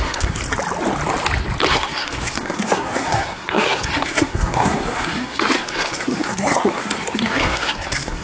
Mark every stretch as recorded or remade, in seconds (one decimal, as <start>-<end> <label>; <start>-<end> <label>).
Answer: 0.0-0.4 remade; 0.4-1.7 recorded; 1.7-8.2 remade